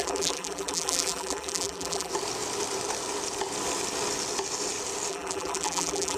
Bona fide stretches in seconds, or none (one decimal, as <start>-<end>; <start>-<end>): 2.1-5.1